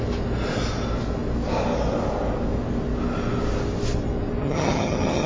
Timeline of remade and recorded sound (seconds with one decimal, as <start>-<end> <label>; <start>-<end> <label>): 0.0-4.4 recorded; 4.4-5.3 remade